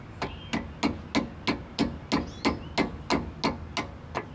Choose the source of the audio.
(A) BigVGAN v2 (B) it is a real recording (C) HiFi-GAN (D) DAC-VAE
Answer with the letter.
B